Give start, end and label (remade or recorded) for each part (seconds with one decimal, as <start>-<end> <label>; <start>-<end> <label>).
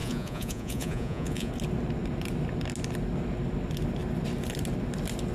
0.0-1.5 remade; 1.5-5.3 recorded